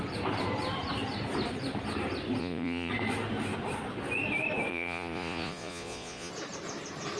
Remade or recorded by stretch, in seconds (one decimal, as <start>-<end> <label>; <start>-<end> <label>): 0.0-2.4 recorded; 2.4-2.9 remade; 2.9-4.7 recorded; 4.7-6.3 remade; 6.3-7.2 recorded